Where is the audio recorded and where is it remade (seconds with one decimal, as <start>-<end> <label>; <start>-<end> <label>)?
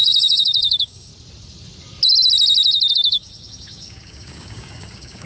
0.0-1.1 remade; 1.1-2.9 recorded; 2.9-5.3 remade